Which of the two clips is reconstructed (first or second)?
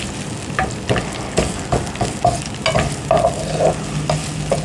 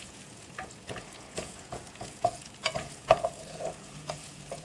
second